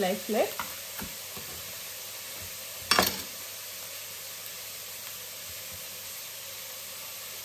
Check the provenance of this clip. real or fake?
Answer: real